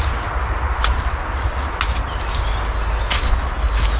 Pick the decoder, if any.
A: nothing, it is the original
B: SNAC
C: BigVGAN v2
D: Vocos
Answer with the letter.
A